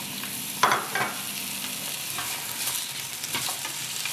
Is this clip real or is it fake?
real